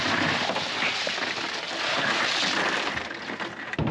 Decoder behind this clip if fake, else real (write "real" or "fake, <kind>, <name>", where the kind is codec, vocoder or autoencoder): real